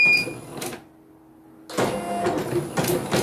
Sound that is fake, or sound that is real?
real